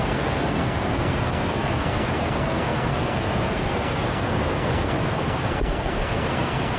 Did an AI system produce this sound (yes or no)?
yes